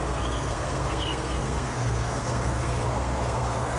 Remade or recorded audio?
remade